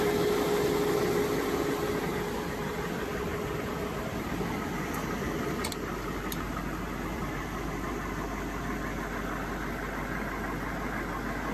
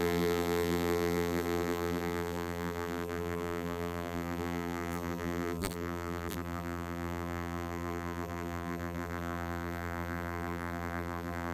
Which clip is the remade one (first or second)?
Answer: second